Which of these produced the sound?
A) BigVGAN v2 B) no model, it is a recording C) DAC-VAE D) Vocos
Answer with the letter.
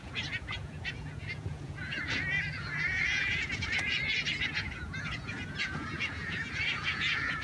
D